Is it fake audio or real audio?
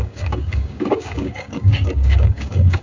fake